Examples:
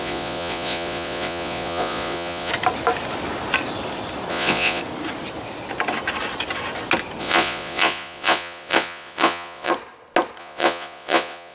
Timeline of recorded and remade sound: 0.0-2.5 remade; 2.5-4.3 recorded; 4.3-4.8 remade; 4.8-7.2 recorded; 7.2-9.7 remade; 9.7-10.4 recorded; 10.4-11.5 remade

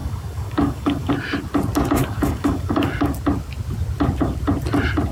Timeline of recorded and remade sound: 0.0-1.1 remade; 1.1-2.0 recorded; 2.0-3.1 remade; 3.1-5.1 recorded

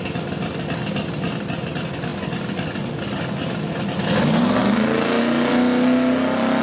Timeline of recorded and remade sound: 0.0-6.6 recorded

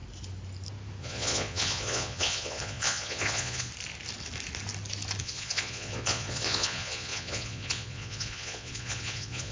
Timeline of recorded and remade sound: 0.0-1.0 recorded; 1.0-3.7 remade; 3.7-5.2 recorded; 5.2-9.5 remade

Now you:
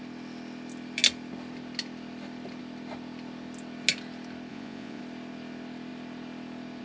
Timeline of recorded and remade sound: 0.0-4.5 recorded; 4.5-5.0 remade; 5.0-6.8 recorded